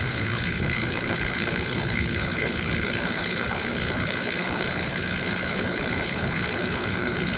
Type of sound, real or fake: fake